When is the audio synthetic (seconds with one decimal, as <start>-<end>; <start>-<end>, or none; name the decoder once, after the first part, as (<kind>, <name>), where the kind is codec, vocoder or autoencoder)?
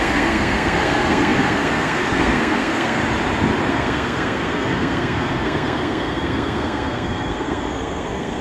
0.0-3.0 (codec, SNAC); 3.7-8.4